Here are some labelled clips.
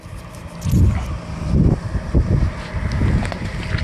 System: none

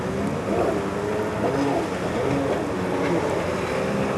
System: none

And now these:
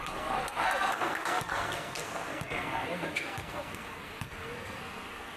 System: codec, SNAC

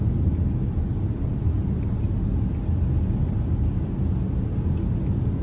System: none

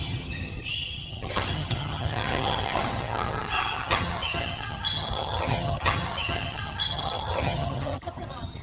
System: vocoder, HiFi-GAN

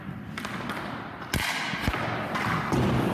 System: none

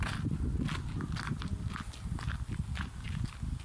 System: none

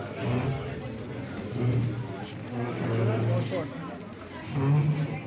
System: none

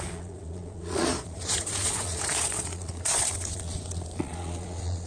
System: vocoder, Vocos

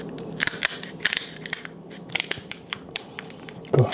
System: vocoder, BigVGAN v2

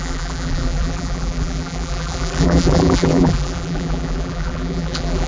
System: vocoder, BigVGAN v2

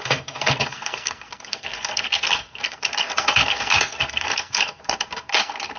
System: codec, SNAC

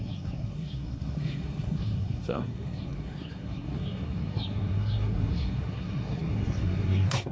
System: codec, SNAC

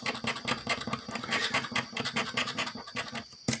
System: none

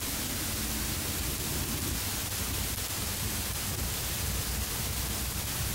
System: none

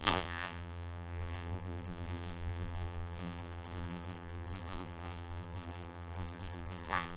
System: vocoder, BigVGAN v2